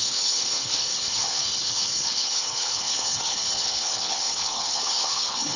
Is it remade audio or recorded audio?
remade